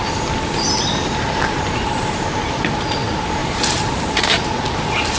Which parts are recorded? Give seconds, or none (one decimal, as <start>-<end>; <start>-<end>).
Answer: 0.0-3.4; 4.4-5.2